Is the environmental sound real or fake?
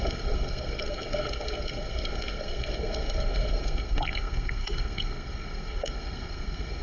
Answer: fake